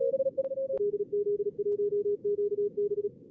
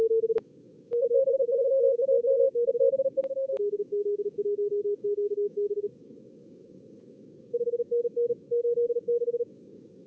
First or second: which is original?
first